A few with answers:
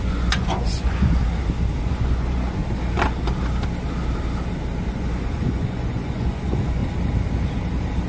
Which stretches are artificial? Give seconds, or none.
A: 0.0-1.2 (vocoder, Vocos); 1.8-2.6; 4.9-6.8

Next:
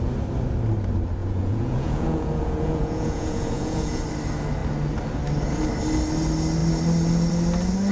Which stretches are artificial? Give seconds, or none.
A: 1.2-4.0 (vocoder, Vocos)

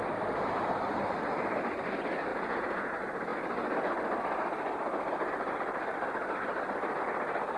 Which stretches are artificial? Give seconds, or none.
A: 2.3-2.9 (vocoder, Vocos)